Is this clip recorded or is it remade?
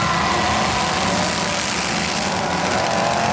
recorded